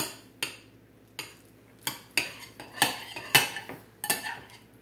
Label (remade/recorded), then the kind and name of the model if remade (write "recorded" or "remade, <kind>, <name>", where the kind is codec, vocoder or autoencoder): recorded